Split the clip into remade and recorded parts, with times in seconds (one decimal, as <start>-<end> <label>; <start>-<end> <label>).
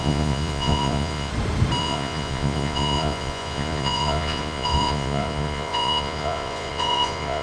0.0-1.3 remade; 1.3-1.8 recorded; 1.8-7.4 remade